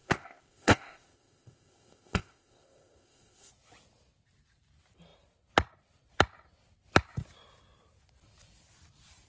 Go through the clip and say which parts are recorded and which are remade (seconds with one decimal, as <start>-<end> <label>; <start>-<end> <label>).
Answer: 0.0-3.5 remade; 3.5-9.3 recorded